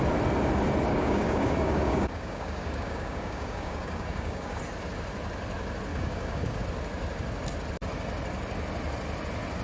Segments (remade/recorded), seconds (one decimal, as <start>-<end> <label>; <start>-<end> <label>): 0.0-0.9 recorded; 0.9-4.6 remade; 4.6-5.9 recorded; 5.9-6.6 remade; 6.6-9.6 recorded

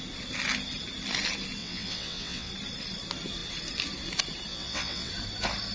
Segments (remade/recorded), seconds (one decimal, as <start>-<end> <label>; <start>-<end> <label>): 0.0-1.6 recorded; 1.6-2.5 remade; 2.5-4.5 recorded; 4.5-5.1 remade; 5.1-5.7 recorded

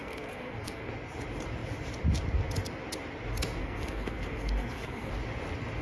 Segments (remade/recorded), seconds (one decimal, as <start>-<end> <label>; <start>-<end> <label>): 0.0-0.9 remade; 0.9-3.6 recorded; 3.6-5.1 remade; 5.1-5.8 recorded

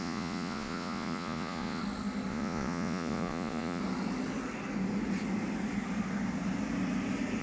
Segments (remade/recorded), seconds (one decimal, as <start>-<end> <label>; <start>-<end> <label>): 0.0-1.8 remade; 1.8-2.3 recorded; 2.3-3.8 remade; 3.8-7.4 recorded

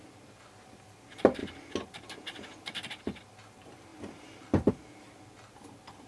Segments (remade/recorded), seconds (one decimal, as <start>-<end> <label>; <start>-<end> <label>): 0.0-6.1 recorded

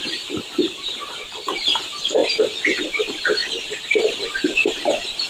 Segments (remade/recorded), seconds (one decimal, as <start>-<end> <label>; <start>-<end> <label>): 0.0-5.3 remade

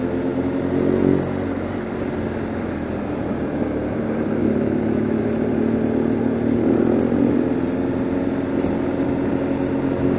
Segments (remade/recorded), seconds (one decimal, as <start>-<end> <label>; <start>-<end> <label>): 0.0-4.4 recorded; 4.4-5.2 remade; 5.2-10.2 recorded

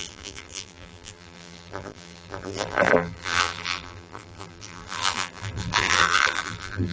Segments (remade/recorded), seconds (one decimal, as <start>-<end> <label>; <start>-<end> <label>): 0.0-6.9 remade